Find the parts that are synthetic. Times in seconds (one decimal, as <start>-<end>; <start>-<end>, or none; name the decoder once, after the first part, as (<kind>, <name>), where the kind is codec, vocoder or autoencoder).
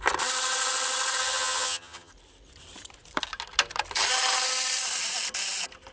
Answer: 1.2-2.1 (vocoder, HiFi-GAN)